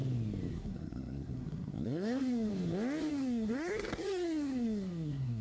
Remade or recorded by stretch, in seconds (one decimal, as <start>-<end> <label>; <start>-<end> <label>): 0.0-0.5 recorded; 0.5-2.5 remade; 2.5-3.1 recorded; 3.1-5.4 remade